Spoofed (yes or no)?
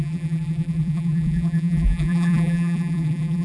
yes